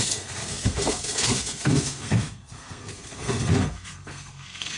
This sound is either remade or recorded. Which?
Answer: remade